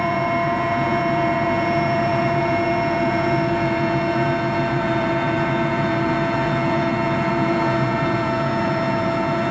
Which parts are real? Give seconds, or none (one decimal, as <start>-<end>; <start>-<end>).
none